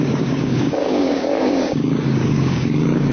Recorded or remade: remade